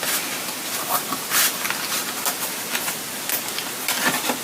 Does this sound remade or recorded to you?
recorded